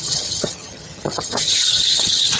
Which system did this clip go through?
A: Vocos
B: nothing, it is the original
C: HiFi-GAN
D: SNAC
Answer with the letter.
C